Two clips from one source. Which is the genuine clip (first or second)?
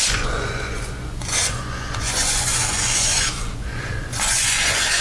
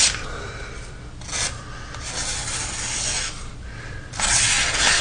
second